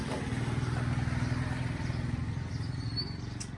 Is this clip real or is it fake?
real